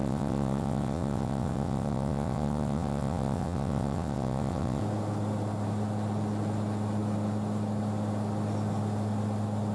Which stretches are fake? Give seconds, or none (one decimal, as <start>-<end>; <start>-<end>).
0.0-4.8